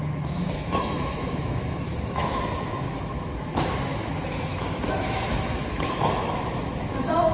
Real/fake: fake